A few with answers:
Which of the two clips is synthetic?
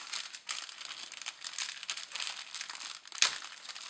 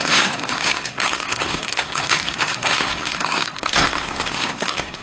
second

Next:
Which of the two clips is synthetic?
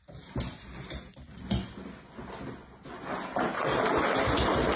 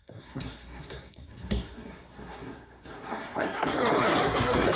second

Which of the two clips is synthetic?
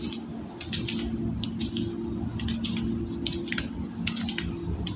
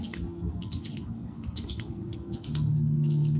second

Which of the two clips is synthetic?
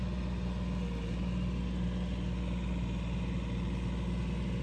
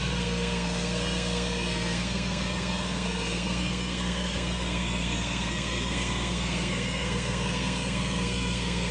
second